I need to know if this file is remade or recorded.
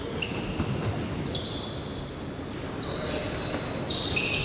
recorded